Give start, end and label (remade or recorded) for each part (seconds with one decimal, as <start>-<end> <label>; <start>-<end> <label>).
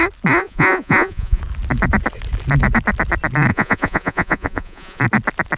0.0-0.4 recorded; 0.4-1.4 remade; 1.4-3.5 recorded; 3.5-5.0 remade; 5.0-5.6 recorded